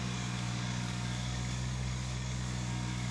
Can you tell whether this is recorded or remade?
remade